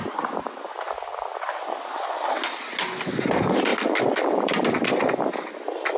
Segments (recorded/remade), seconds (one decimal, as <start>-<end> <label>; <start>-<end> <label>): 0.0-3.7 recorded; 3.7-5.0 remade; 5.0-6.0 recorded

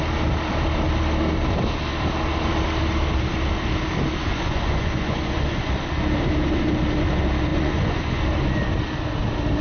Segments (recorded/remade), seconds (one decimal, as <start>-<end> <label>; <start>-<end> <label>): 0.0-4.3 recorded; 4.3-5.7 remade; 5.7-7.5 recorded; 7.5-8.2 remade; 8.2-9.6 recorded